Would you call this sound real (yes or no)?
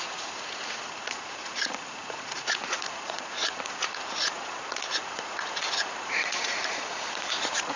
no